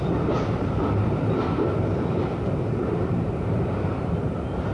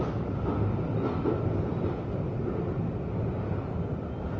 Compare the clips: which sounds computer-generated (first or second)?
first